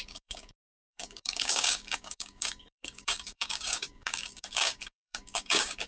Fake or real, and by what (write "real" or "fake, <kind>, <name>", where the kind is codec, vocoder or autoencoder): fake, codec, DAC